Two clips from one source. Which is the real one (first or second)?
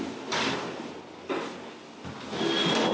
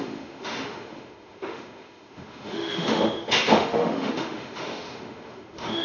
first